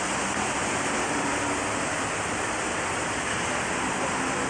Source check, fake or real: real